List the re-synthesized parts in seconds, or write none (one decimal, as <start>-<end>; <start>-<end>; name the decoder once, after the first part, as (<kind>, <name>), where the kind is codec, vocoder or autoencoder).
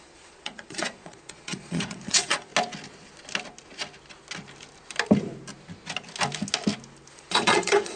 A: 0.0-2.5 (vocoder, Vocos); 7.1-8.0